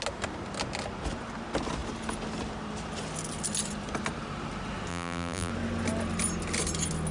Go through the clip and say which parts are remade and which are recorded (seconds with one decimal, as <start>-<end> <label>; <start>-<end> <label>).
0.0-4.9 recorded; 4.9-5.5 remade; 5.5-7.1 recorded